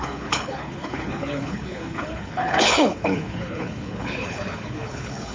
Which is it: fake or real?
fake